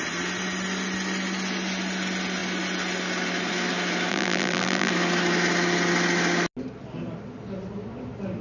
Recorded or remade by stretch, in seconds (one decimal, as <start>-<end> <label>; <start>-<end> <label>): 0.0-4.1 recorded; 4.1-4.9 remade; 4.9-8.4 recorded